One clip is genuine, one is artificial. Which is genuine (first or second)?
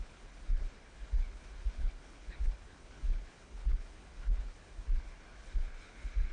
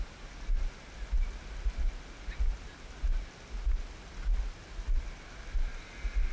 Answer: second